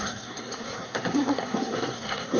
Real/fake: fake